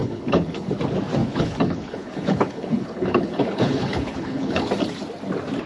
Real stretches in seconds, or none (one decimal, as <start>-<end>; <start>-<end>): 0.7-1.2; 4.6-5.7